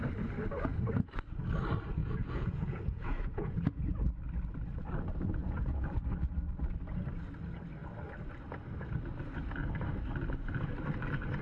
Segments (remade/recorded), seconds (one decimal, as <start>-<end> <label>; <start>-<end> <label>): 0.0-2.0 recorded; 2.0-3.8 remade; 3.8-5.4 recorded; 5.4-6.0 remade; 6.0-11.4 recorded